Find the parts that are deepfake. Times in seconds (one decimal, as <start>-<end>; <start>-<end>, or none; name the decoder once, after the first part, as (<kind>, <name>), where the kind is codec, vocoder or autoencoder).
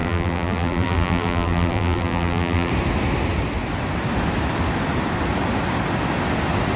0.0-2.7 (vocoder, BigVGAN v2)